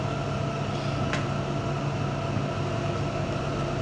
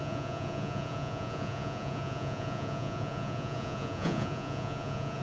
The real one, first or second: first